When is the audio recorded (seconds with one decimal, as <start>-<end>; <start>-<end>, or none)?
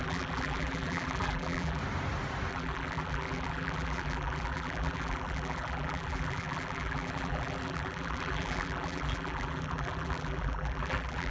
1.8-2.5